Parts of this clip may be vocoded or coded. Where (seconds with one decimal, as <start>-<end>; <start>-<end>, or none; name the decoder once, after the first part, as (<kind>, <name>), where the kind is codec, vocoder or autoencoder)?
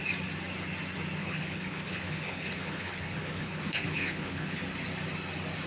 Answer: 1.2-4.6 (codec, HILCodec)